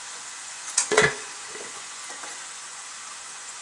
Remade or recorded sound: remade